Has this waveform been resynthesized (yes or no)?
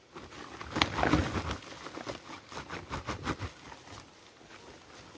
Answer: no